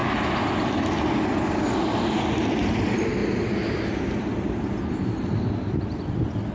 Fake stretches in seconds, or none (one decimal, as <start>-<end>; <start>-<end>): none